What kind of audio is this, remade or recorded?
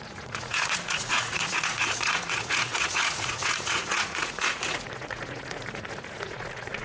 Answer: remade